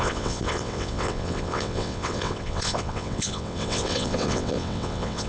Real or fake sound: fake